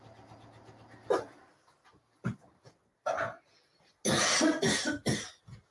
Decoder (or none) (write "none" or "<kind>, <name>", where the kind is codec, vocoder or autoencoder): none